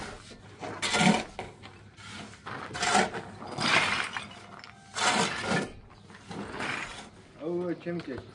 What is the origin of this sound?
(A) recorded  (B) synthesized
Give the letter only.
A